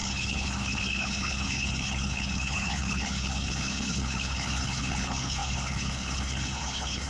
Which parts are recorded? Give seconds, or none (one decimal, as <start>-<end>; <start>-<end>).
none